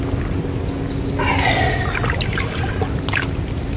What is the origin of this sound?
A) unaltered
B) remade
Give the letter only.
A